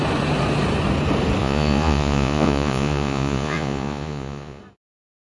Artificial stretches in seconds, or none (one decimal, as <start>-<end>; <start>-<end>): 1.4-4.6